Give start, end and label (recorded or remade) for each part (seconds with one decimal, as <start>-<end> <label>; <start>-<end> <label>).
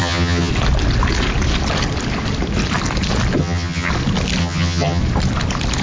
0.0-0.5 remade; 0.5-3.4 recorded; 3.4-3.9 remade; 3.9-4.4 recorded; 4.4-5.0 remade; 5.0-5.8 recorded